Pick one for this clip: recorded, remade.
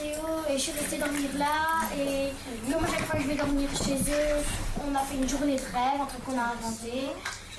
recorded